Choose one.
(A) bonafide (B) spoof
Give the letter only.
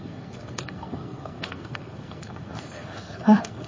B